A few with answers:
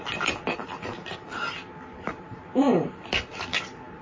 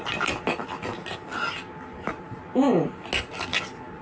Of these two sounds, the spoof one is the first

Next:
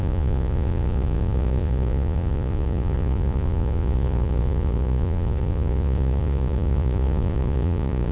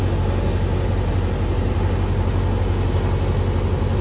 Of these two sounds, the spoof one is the first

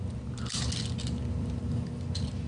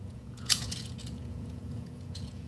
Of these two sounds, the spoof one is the second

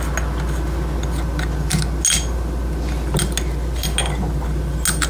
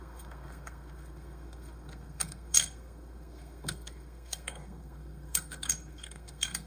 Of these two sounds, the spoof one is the second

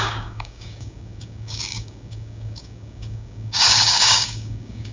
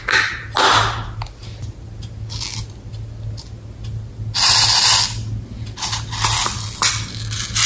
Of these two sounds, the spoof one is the first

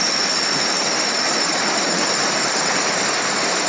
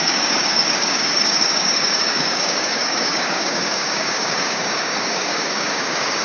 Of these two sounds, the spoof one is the second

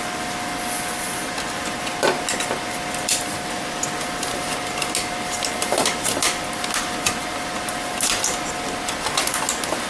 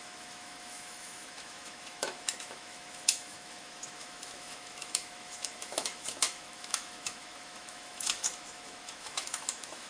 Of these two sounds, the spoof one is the second